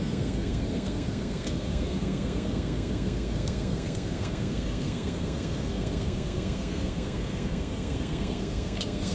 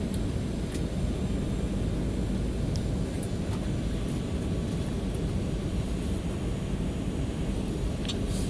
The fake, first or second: first